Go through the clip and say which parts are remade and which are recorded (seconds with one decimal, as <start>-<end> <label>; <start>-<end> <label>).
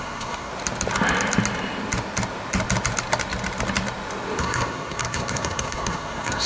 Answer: 0.0-0.5 remade; 0.5-4.4 recorded; 4.4-6.5 remade